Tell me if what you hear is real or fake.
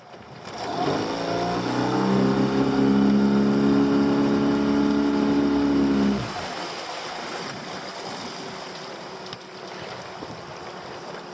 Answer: real